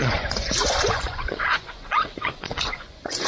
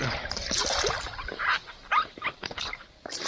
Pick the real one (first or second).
second